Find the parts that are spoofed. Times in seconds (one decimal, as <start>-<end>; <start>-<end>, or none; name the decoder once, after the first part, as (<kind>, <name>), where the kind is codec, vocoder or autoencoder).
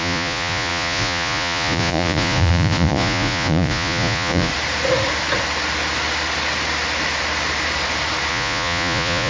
0.0-4.5 (vocoder, Vocos); 8.3-9.3